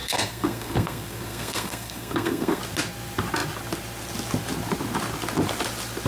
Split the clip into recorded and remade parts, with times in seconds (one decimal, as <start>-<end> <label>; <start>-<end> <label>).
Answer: 0.0-2.6 remade; 2.6-6.1 recorded